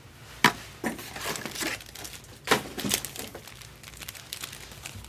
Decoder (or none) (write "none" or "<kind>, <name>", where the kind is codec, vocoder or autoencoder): none